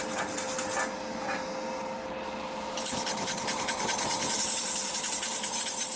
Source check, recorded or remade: recorded